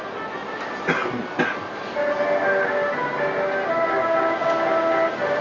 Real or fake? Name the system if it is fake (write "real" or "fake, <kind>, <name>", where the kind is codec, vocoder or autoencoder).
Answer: real